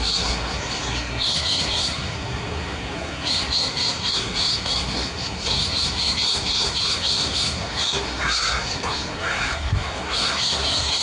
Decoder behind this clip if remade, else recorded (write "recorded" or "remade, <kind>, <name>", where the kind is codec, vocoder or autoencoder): remade, codec, SNAC